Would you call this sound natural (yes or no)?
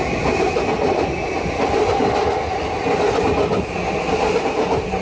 yes